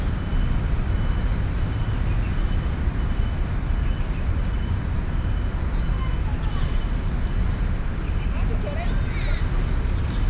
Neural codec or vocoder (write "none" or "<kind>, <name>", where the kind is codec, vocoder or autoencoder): none